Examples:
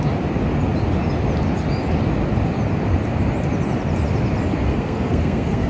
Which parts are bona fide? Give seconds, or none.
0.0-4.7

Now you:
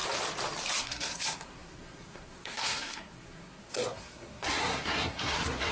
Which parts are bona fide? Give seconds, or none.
0.0-0.8

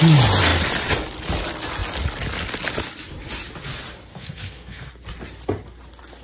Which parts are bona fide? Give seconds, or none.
0.0-4.1; 4.9-6.2